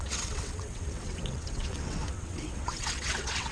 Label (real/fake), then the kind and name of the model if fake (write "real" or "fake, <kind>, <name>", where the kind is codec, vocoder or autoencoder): fake, vocoder, WaveNeXt